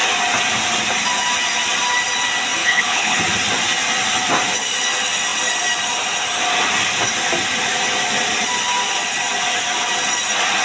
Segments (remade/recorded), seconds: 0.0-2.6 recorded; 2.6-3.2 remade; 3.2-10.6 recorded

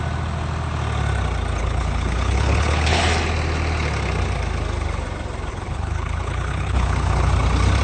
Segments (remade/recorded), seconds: 0.0-1.6 recorded; 1.6-3.0 remade; 3.0-5.5 recorded; 5.5-7.3 remade; 7.3-7.8 recorded

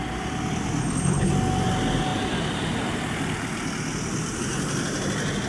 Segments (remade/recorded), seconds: 0.0-0.8 recorded; 0.8-1.3 remade; 1.3-5.5 recorded

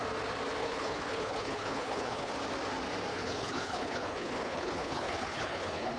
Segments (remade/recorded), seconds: 0.0-0.6 recorded; 0.6-2.3 remade; 2.3-3.1 recorded; 3.1-6.0 remade